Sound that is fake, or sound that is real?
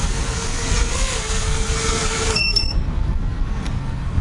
fake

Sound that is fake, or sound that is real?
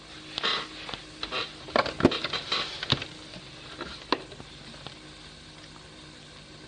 real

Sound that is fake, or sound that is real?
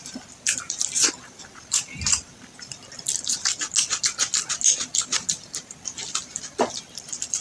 real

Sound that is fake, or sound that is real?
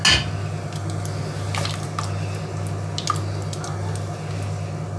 real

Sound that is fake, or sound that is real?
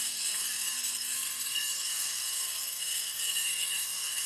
fake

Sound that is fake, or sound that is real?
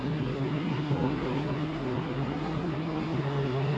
fake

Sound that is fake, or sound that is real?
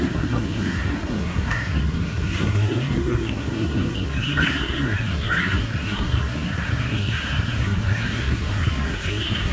fake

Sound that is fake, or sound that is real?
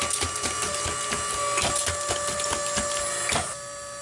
real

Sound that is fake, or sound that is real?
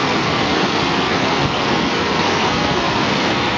fake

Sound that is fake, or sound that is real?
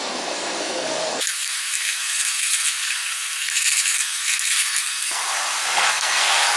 fake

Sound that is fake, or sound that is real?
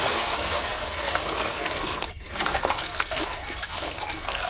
fake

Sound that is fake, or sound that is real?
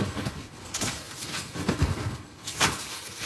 fake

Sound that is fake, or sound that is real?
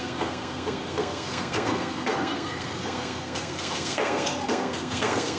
fake